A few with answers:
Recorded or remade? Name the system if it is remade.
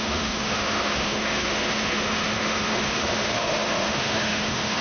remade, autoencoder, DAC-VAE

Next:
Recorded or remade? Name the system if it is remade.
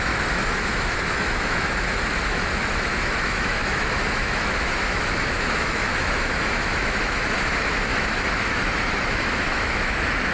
remade, autoencoder, DAC-VAE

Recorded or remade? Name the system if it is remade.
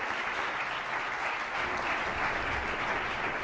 recorded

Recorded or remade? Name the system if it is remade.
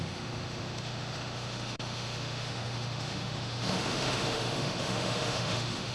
remade, autoencoder, DAC-VAE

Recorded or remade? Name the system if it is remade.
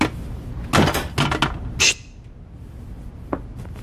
recorded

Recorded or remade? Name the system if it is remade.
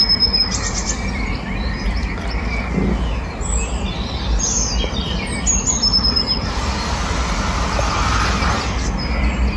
recorded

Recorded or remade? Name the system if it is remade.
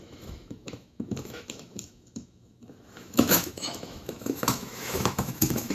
remade, autoencoder, DAC-VAE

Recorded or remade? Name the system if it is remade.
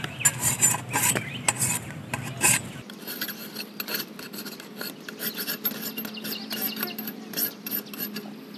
recorded